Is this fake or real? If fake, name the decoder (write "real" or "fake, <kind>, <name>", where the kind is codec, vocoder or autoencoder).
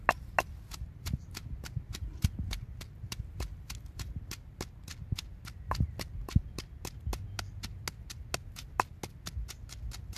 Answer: real